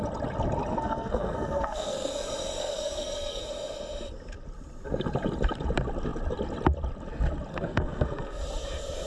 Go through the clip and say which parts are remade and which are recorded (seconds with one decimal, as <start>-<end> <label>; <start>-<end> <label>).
0.0-0.7 recorded; 0.7-2.1 remade; 2.1-2.6 recorded; 2.6-3.4 remade; 3.4-7.5 recorded; 7.5-8.4 remade; 8.4-9.1 recorded